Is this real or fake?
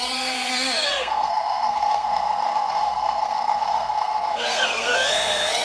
fake